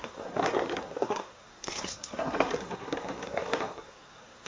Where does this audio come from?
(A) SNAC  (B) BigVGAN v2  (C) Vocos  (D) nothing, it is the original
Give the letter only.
A